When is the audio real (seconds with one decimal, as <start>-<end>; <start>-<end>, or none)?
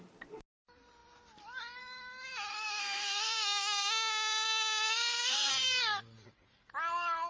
0.0-2.5; 5.5-7.3